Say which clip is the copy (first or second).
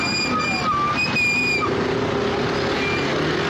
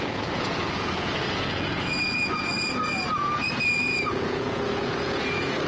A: second